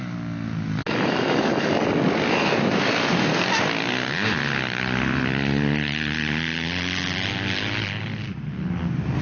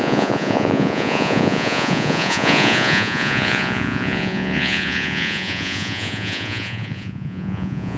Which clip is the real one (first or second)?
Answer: first